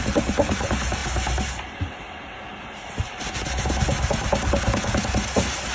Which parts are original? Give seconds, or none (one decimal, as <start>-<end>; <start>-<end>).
0.0-5.7